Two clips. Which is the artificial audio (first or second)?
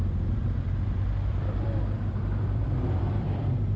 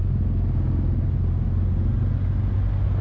first